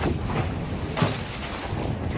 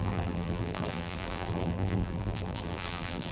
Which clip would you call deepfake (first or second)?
second